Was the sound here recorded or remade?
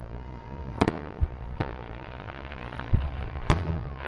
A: remade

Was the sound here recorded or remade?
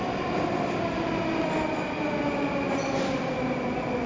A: recorded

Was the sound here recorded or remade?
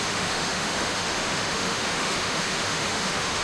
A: remade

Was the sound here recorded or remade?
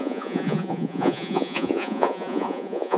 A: remade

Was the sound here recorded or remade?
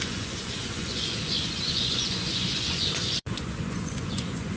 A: remade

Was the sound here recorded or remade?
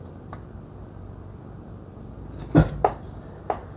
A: recorded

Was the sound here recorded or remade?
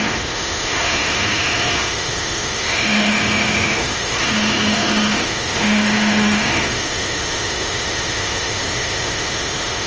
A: remade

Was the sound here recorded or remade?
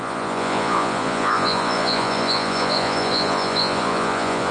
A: remade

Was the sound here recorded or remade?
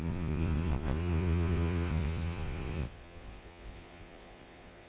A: remade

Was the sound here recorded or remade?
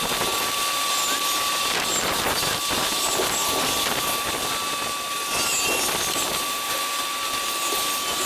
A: recorded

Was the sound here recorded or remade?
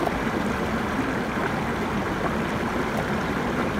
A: recorded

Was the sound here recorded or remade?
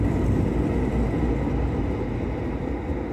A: recorded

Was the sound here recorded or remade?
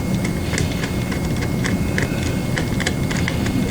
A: recorded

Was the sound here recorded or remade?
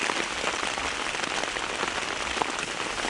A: recorded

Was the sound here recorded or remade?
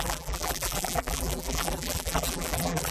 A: remade